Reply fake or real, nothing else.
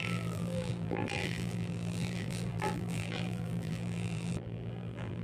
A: fake